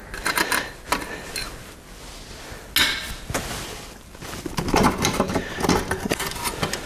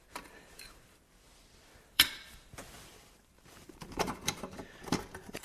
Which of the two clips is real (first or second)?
first